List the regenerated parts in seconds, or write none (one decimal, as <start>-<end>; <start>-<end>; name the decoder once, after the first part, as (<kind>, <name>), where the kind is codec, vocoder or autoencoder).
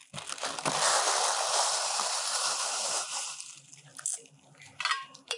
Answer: 1.5-3.9 (vocoder, BigVGAN v2); 5.0-5.4